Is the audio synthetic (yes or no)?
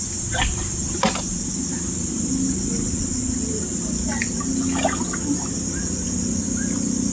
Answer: no